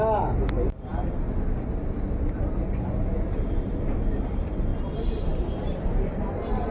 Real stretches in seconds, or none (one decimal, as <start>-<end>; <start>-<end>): 0.0-4.7